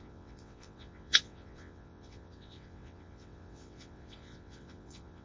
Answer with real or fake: fake